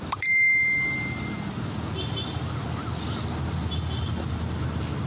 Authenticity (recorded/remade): recorded